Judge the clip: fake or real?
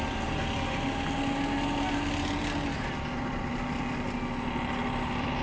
real